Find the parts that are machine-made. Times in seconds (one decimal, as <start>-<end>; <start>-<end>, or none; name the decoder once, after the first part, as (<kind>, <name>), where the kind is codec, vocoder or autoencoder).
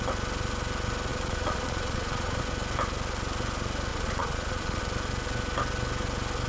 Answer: 1.1-2.4 (vocoder, Vocos); 3.9-4.8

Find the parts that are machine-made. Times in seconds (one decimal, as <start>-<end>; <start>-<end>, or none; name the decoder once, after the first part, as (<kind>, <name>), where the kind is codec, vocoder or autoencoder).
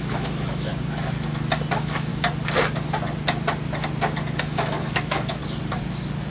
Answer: 0.0-0.7 (autoencoder, DAC-VAE); 1.7-2.1; 4.4-5.4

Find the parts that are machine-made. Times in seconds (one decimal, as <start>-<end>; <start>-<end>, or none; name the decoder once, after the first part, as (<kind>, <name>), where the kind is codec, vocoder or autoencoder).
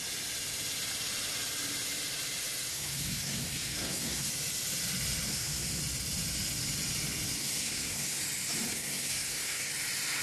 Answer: 2.7-4.3 (codec, SNAC); 5.3-5.8; 7.4-8.2; 8.7-9.7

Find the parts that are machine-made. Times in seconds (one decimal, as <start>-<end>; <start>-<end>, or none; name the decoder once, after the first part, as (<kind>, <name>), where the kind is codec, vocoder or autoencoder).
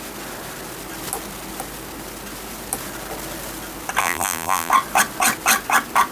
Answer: 4.0-4.7 (vocoder, BigVGAN v2)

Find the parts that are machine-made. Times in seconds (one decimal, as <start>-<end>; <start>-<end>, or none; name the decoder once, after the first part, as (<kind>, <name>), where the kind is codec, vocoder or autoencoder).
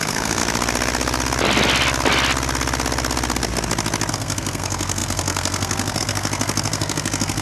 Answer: 0.0-0.4 (codec, SNAC); 4.1-7.4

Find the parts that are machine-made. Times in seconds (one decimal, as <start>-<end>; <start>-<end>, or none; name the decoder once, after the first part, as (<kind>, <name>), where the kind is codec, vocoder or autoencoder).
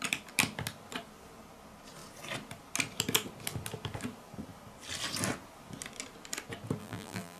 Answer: 6.8-7.4 (vocoder, BigVGAN v2)